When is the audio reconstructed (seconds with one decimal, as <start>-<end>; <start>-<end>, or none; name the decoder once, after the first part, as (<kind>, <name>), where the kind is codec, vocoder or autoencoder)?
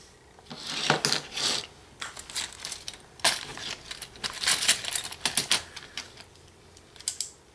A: none